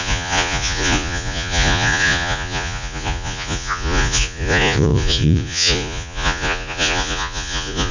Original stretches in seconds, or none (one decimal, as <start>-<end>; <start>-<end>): none